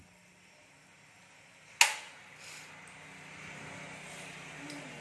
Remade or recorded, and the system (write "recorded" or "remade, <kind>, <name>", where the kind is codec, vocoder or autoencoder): recorded